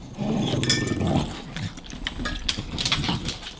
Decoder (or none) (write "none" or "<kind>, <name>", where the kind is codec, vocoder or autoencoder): none